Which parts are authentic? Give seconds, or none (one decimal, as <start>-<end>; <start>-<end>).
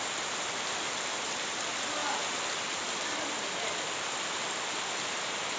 2.0-2.9